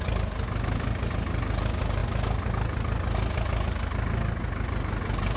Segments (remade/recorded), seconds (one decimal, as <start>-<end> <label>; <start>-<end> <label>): 0.0-5.4 recorded